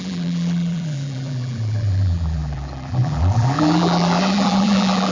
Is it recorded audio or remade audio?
remade